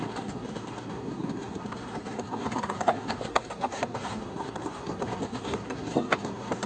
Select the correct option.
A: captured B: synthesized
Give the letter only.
B